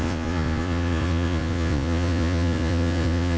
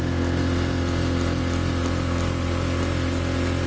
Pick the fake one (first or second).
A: first